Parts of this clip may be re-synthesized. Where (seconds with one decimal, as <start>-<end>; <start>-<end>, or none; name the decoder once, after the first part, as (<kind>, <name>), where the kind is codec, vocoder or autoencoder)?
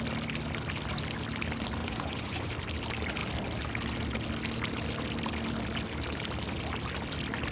1.8-2.5 (vocoder, Vocos)